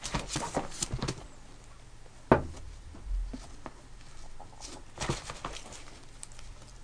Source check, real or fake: real